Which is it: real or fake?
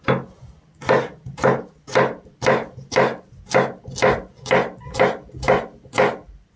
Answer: real